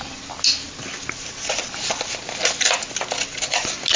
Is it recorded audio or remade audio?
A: recorded